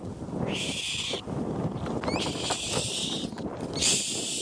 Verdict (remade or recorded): recorded